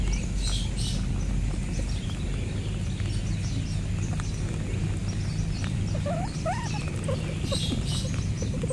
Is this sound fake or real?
real